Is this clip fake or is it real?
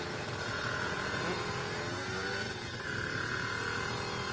fake